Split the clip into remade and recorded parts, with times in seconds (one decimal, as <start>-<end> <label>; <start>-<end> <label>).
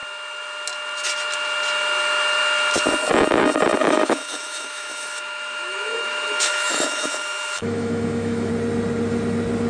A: 0.0-3.8 recorded; 3.8-8.5 remade; 8.5-9.7 recorded